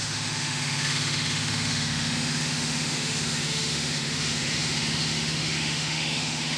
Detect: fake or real fake